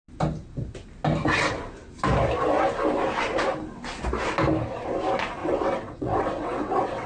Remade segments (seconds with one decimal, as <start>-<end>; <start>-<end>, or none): 5.4-7.1